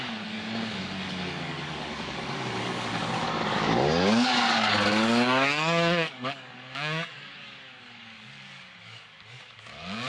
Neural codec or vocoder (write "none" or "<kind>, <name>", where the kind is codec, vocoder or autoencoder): codec, DAC